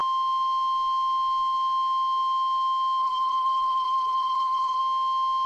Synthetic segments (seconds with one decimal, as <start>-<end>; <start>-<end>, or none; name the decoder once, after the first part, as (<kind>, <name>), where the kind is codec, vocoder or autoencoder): 3.0-4.8 (vocoder, BigVGAN v2)